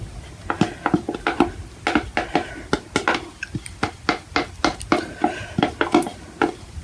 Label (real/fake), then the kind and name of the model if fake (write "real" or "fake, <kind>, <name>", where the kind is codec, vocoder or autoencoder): real